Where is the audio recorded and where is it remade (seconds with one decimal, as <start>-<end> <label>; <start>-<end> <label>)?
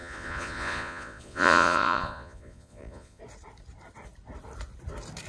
0.0-3.2 remade; 3.2-5.3 recorded